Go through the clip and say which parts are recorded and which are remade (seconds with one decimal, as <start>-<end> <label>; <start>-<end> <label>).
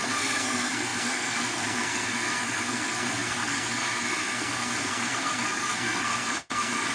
0.0-6.9 remade